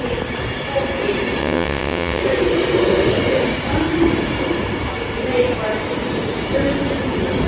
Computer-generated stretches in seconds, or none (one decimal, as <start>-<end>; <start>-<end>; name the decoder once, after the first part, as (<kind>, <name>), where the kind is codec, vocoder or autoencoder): 1.4-2.2 (vocoder, WaveNeXt)